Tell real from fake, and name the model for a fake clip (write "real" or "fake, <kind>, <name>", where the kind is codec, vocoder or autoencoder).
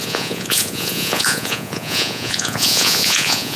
fake, vocoder, Vocos